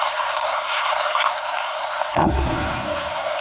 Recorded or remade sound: remade